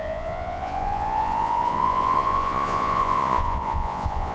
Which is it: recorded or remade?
remade